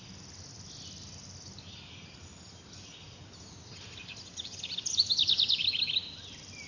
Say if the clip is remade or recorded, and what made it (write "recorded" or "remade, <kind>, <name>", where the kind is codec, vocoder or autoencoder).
recorded